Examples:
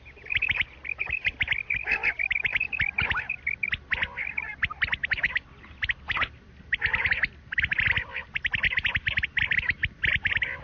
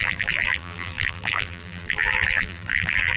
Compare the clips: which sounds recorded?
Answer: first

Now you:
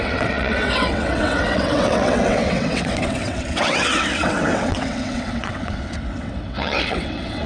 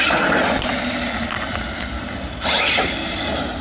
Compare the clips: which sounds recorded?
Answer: second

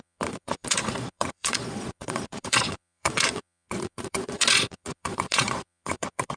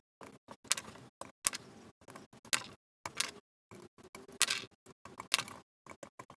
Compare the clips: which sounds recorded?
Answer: second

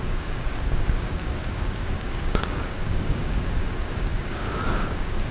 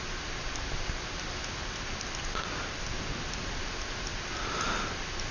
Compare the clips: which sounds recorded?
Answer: second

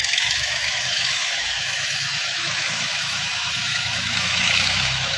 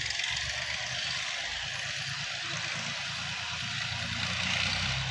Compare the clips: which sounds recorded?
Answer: second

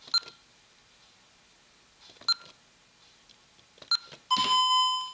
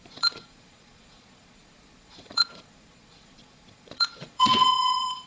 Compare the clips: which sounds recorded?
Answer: first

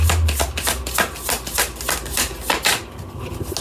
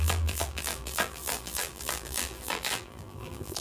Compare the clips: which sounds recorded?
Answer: first